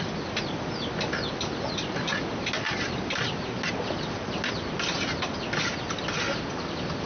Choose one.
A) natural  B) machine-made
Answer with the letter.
A